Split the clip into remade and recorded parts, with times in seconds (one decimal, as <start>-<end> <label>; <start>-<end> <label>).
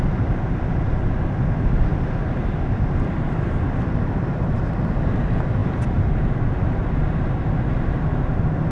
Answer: 0.0-1.9 recorded; 1.9-3.8 remade; 3.8-5.6 recorded; 5.6-6.5 remade; 6.5-8.7 recorded